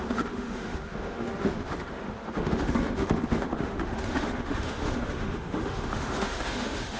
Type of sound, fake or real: fake